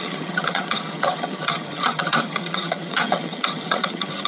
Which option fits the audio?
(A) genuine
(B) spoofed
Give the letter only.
B